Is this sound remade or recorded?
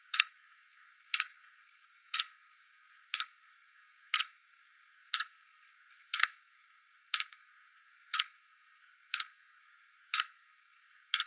remade